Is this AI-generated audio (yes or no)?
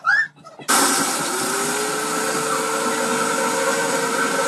no